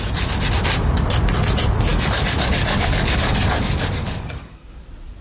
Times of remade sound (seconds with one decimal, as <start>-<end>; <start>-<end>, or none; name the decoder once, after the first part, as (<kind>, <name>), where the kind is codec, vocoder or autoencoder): 1.9-4.8 (codec, DAC)